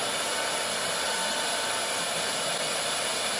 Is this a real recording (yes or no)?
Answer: yes